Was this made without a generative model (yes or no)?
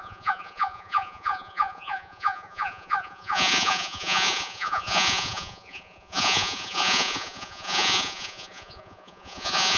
no